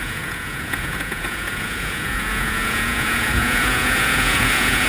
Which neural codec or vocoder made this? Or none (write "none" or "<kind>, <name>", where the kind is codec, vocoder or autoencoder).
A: vocoder, Vocos